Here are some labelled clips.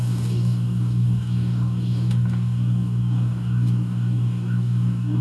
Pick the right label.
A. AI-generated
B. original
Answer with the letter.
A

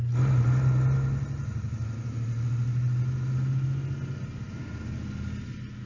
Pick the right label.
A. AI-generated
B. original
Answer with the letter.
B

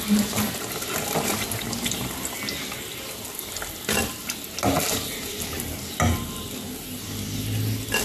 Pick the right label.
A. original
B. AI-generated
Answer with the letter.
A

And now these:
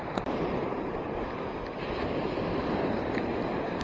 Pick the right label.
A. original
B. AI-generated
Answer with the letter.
A